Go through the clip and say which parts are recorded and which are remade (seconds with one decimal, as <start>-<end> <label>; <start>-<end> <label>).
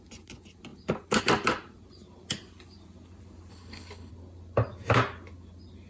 0.0-3.5 recorded; 3.5-4.1 remade; 4.1-5.9 recorded